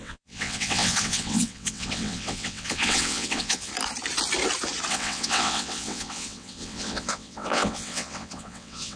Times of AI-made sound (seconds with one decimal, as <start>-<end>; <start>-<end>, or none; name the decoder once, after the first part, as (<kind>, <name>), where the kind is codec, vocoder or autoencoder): 0.0-3.7 (vocoder, WaveNeXt); 4.9-9.0